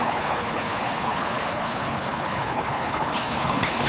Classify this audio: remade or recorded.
remade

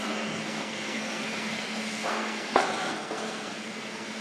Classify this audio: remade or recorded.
remade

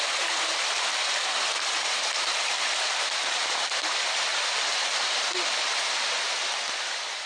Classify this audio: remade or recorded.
recorded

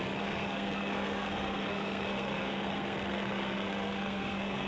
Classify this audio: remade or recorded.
remade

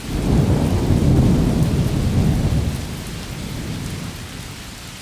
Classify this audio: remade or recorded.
recorded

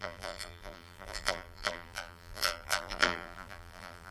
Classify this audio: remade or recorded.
remade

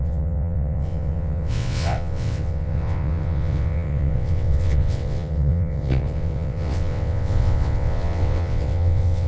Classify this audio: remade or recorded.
remade